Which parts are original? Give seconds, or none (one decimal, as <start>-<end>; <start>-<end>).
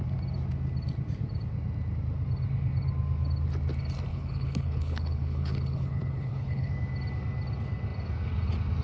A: 0.0-4.1; 6.7-8.8